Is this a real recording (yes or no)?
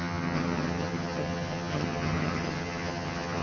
no